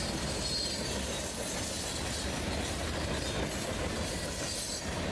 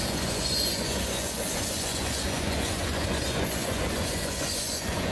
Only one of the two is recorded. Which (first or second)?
first